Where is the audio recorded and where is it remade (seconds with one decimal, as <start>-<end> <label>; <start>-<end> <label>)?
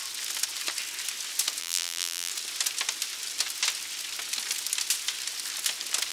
0.0-1.6 recorded; 1.6-2.3 remade; 2.3-6.1 recorded